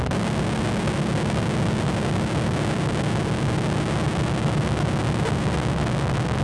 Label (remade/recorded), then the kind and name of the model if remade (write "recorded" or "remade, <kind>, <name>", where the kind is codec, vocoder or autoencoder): recorded